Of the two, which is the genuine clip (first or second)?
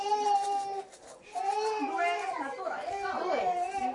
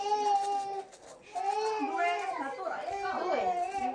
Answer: second